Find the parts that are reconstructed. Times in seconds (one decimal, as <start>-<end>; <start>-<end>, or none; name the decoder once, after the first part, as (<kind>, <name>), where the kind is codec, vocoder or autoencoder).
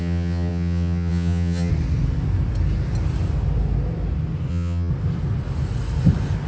0.0-1.7 (vocoder, HiFi-GAN); 4.5-4.9